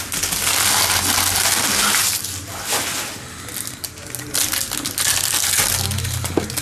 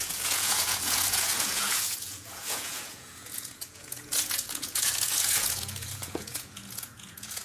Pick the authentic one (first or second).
first